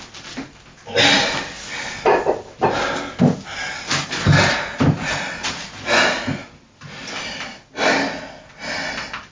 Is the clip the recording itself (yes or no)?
yes